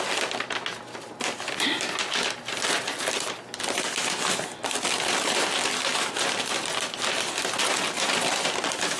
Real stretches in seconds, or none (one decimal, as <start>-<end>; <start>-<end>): 0.0-9.0